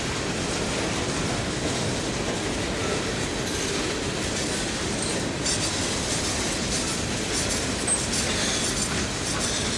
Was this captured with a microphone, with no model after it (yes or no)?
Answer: yes